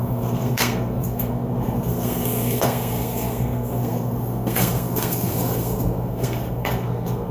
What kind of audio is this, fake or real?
fake